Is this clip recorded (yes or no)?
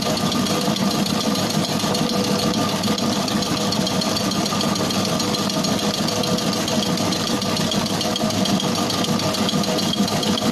yes